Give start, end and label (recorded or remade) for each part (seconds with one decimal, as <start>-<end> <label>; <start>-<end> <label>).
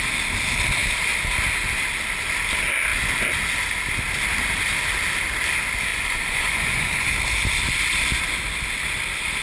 0.0-5.9 recorded; 5.9-7.1 remade; 7.1-9.4 recorded